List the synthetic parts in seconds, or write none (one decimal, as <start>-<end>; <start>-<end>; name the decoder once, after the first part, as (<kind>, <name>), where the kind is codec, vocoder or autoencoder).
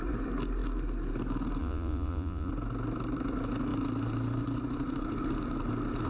1.6-2.5 (vocoder, Vocos)